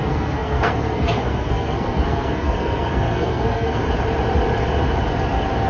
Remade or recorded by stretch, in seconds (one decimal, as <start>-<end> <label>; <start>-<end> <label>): 0.0-3.8 remade; 3.8-5.7 recorded